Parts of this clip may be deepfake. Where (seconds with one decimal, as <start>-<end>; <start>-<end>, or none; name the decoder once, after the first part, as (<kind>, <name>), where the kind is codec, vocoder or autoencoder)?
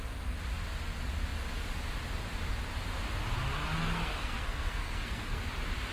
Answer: 3.8-5.4 (codec, SNAC)